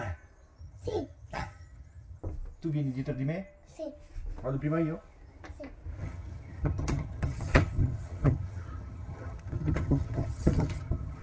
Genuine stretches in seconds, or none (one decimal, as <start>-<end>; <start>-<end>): 0.0-0.6; 2.2-6.0